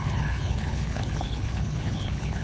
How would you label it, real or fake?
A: fake